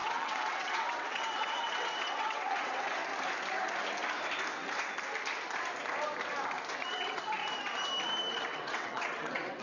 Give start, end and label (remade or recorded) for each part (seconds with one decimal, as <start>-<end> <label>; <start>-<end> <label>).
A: 0.0-3.0 remade; 3.0-6.9 recorded; 6.9-7.4 remade; 7.4-8.3 recorded; 8.3-9.6 remade